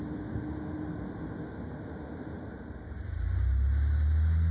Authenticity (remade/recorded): recorded